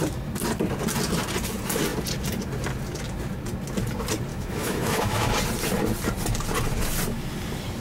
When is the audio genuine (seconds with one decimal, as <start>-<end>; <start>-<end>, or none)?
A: 0.0-4.3; 5.3-7.8